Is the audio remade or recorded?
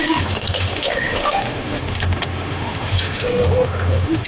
remade